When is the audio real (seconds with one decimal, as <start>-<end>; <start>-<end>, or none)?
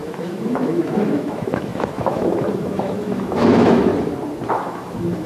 3.9-4.5